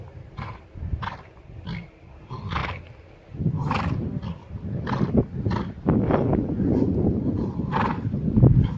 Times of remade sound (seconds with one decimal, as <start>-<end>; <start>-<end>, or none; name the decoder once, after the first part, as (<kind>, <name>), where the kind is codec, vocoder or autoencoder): none